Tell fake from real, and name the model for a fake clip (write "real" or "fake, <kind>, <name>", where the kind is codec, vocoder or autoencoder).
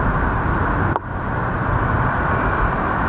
real